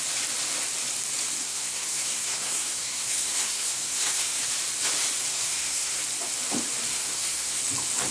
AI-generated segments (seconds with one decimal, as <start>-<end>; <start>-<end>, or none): 1.4-4.4; 5.3-6.0; 6.9-7.6